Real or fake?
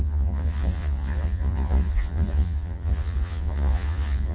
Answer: fake